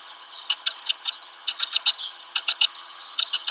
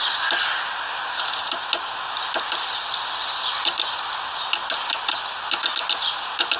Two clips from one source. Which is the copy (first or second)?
first